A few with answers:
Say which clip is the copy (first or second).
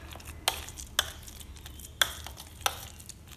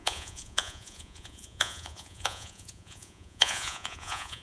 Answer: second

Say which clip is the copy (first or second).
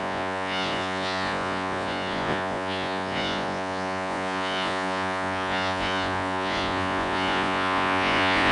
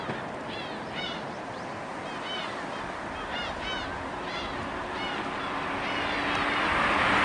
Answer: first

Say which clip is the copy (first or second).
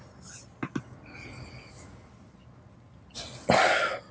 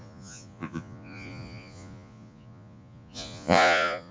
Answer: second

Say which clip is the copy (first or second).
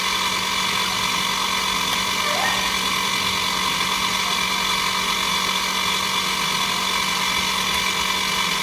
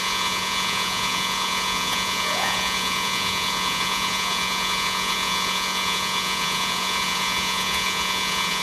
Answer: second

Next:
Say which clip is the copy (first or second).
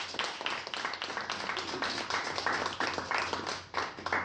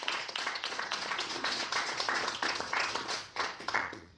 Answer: second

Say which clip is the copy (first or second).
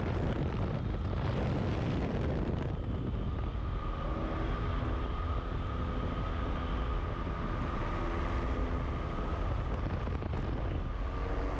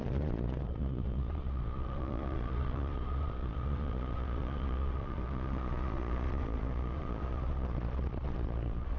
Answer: second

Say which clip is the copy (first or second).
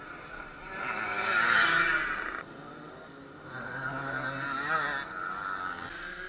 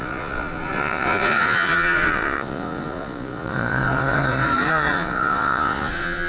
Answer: second